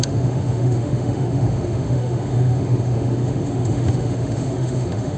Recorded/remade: remade